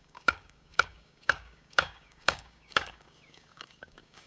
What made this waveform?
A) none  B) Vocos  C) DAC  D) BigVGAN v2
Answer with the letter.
C